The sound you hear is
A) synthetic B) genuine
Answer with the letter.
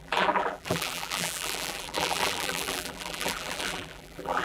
A